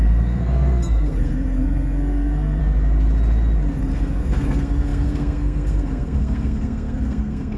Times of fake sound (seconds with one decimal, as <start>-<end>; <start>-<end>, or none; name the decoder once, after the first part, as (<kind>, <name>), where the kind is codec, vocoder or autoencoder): 0.0-2.6 (codec, SNAC); 3.8-7.6